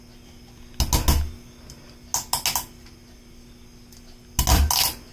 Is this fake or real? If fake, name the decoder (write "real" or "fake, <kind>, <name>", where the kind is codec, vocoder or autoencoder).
real